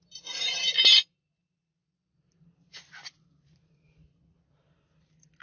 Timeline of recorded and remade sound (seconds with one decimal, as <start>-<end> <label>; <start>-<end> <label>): 0.0-5.4 recorded